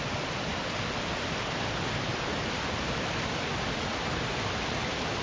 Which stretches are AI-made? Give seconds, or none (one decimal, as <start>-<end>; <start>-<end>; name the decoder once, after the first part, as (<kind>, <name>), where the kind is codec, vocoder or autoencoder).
none